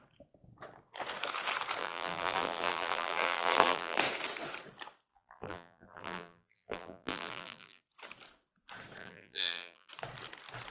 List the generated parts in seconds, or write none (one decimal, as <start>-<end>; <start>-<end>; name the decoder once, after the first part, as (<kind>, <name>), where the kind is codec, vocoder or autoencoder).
1.8-4.0 (vocoder, BigVGAN v2); 5.1-7.8; 9.0-9.9